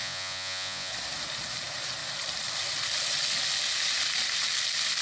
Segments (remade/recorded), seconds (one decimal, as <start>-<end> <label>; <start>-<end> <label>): 0.0-0.9 remade; 0.9-5.0 recorded